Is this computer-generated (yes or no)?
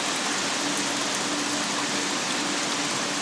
no